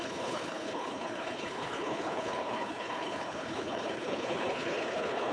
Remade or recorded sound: remade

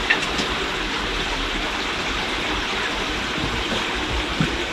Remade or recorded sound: recorded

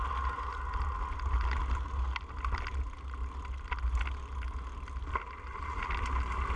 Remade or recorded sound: recorded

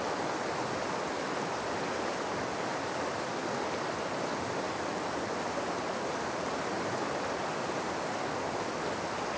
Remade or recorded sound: recorded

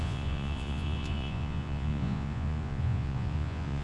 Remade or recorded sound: remade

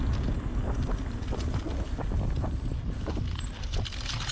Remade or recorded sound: recorded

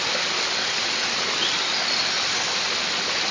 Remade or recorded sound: recorded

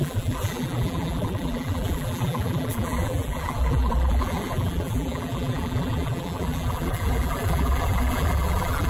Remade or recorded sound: remade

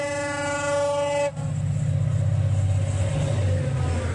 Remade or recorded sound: recorded